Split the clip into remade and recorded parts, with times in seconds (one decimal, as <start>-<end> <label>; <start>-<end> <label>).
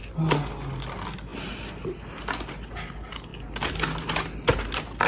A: 0.0-5.1 recorded